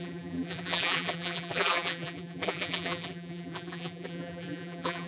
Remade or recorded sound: remade